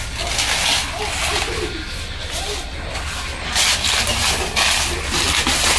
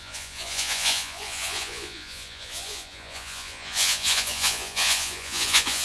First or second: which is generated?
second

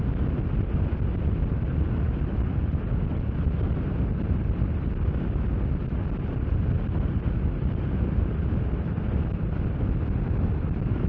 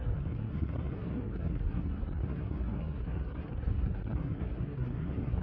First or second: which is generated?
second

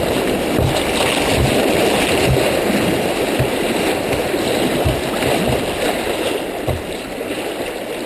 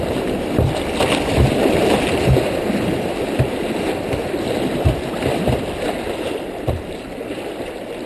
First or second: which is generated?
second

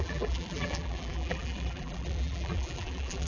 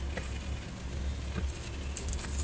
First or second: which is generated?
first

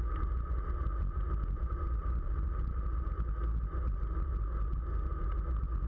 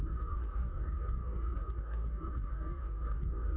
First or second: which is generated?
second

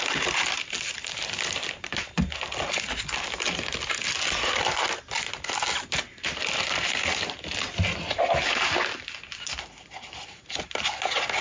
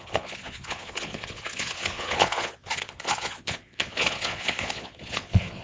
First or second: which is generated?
second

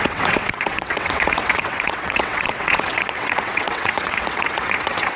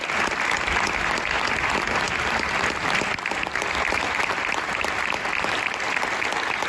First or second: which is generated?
first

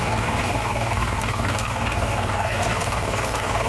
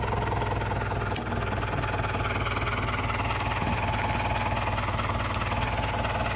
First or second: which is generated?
first